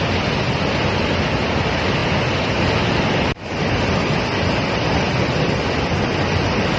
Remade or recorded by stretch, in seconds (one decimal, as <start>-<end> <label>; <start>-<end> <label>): 0.0-6.8 recorded